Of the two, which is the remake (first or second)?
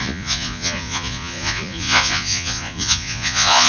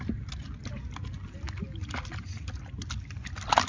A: first